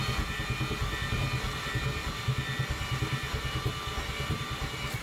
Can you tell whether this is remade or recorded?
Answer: recorded